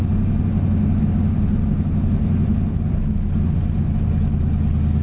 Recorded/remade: recorded